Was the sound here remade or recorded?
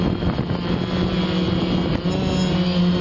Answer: recorded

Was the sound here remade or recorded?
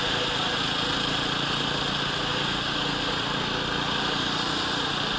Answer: recorded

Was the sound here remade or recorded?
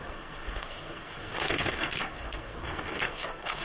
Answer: remade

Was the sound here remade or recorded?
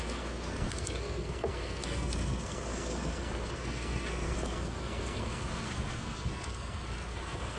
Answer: remade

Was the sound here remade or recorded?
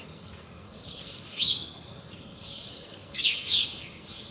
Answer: remade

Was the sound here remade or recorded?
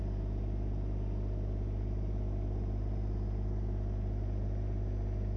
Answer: recorded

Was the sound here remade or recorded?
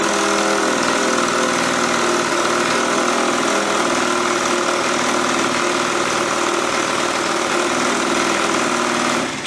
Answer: recorded